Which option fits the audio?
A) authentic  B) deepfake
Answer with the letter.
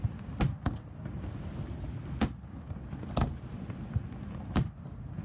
A